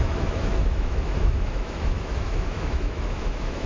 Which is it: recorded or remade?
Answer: remade